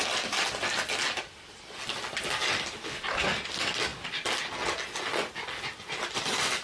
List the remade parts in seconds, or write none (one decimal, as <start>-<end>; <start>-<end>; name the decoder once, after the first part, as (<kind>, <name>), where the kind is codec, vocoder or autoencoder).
none

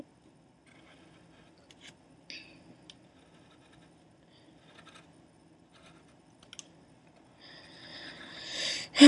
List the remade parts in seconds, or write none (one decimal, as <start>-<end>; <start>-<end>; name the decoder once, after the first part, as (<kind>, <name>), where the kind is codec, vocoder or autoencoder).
none

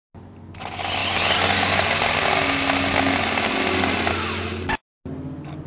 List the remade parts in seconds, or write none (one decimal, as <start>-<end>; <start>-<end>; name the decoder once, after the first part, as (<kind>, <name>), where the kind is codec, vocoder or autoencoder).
none

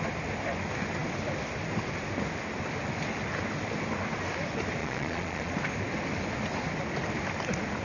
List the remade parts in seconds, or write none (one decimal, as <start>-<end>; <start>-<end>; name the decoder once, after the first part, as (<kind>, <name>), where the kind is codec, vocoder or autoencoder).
4.8-5.5 (vocoder, Vocos)

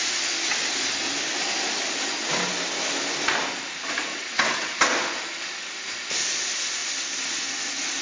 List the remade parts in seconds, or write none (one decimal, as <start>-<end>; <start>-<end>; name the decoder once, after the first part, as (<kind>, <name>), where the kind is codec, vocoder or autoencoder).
4.1-4.8 (vocoder, WaveNeXt)

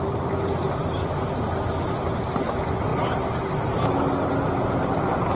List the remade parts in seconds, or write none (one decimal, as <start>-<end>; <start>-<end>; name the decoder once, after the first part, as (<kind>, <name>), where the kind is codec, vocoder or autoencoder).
none